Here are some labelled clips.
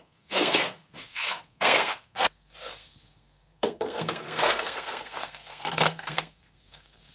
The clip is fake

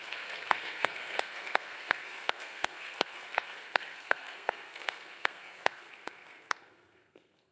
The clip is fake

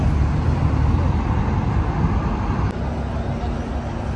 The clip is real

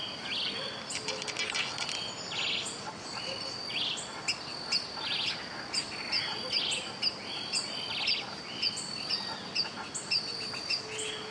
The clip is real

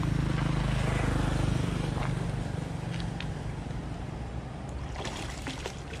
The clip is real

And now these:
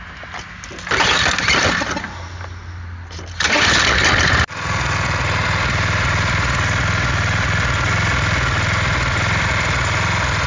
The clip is real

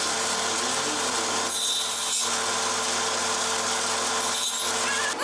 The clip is real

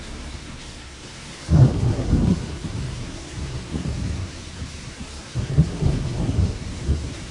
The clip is fake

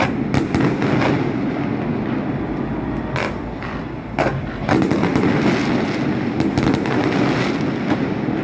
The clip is real